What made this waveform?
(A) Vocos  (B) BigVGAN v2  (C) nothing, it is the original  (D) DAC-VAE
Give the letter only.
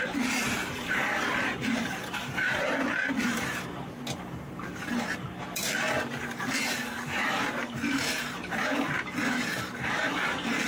B